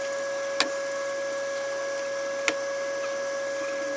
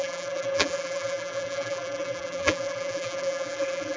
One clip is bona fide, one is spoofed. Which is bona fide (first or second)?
first